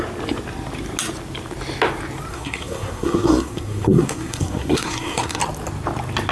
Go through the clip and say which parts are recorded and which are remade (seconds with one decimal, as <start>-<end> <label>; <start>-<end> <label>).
0.0-2.3 recorded; 2.3-5.4 remade; 5.4-6.3 recorded